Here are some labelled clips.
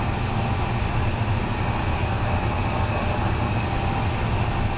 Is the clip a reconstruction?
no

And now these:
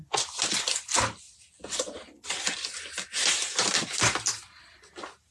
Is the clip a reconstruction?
no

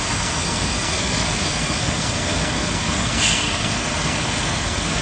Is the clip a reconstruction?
yes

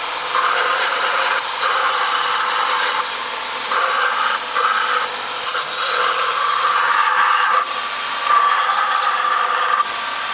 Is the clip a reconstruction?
yes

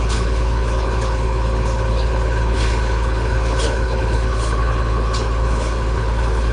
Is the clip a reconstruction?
yes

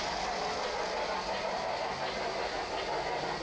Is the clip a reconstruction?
no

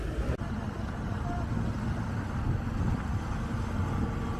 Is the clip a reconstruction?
no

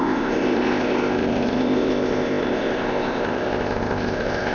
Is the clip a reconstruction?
yes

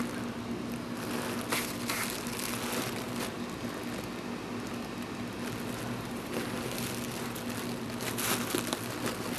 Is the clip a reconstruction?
no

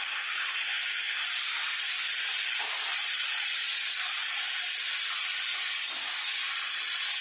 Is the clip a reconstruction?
no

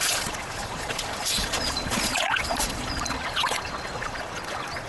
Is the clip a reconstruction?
yes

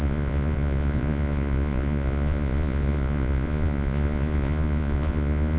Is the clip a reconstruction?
yes